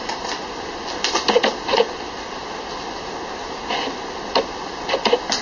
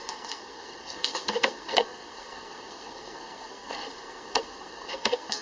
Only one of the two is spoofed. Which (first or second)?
second